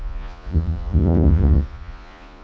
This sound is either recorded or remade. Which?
remade